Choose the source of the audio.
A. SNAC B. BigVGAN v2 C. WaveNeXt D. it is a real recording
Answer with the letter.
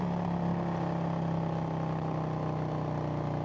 D